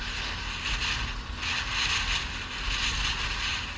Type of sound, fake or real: real